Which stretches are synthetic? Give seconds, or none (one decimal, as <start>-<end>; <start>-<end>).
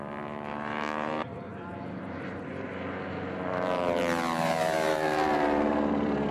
0.0-6.3